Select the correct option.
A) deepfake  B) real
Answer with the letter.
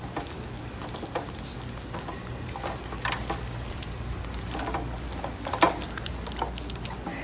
B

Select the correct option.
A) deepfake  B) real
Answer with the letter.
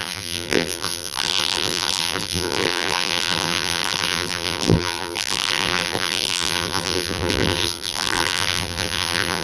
A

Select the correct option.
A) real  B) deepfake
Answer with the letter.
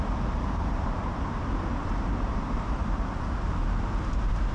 B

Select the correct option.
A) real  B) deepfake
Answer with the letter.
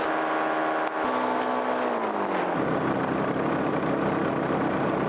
A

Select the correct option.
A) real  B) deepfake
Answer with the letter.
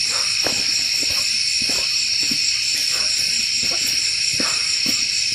B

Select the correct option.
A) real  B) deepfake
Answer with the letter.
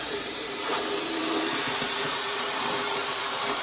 B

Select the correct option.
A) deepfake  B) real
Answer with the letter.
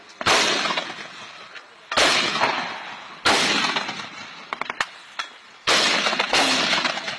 B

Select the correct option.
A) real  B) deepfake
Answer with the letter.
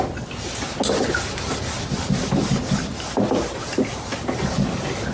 A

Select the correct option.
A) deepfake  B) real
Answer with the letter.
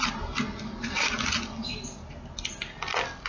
B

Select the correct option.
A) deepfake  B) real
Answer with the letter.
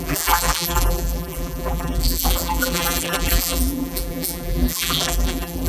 A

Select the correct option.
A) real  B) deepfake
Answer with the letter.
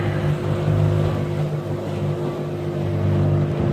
A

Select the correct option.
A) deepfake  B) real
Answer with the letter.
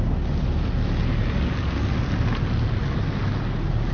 B